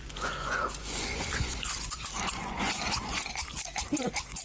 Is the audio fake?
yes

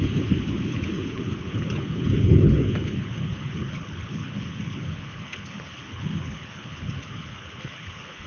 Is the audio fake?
yes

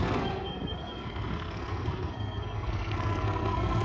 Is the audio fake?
yes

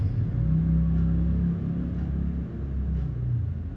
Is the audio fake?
no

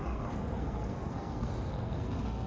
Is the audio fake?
yes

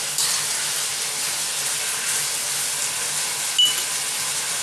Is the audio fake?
no